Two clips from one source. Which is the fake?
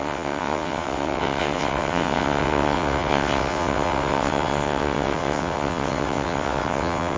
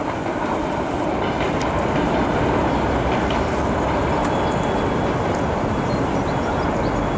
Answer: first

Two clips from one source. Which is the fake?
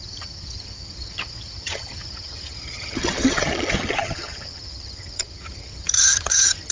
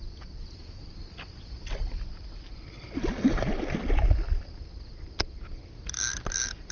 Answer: first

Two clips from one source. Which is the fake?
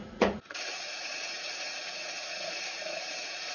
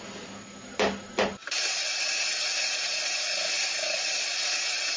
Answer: first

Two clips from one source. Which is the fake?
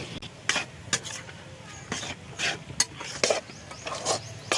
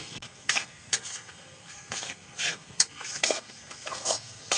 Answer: second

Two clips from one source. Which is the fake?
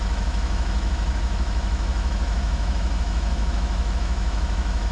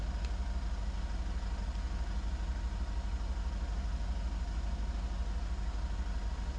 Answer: first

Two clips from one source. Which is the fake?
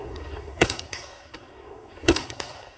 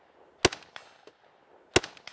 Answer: first